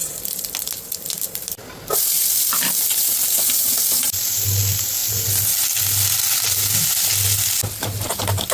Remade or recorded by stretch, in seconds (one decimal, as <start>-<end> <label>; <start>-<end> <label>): 0.0-8.5 recorded